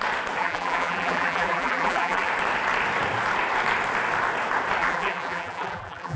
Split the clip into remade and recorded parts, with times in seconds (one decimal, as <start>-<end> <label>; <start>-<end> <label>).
0.0-0.4 recorded; 0.4-2.3 remade; 2.3-4.8 recorded; 4.8-6.2 remade